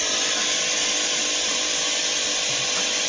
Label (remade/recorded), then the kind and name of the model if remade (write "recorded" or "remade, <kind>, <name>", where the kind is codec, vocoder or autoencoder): recorded